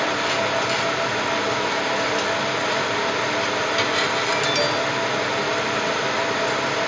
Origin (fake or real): real